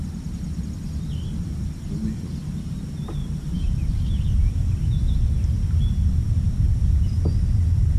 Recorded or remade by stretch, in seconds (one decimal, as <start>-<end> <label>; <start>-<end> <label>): 0.0-3.2 recorded; 3.2-4.9 remade; 4.9-8.0 recorded